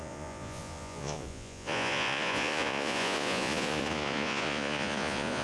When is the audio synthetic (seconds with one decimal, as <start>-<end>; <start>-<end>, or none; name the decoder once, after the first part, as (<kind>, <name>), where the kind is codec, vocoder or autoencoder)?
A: 0.0-5.4 (vocoder, Vocos)